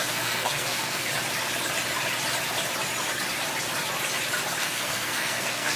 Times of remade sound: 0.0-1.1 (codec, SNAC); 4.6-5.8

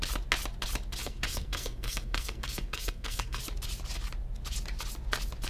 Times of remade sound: 1.0-3.4 (codec, SNAC)